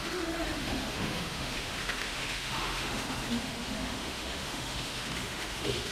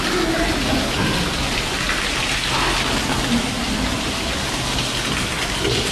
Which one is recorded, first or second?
second